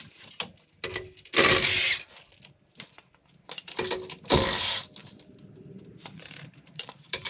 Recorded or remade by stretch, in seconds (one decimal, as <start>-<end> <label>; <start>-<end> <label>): 0.0-5.0 recorded; 5.0-7.3 remade